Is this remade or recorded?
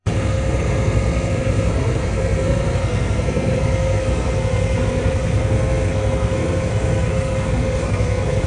remade